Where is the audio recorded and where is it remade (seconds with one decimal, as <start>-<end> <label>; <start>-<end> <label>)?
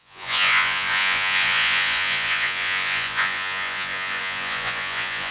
0.0-5.3 remade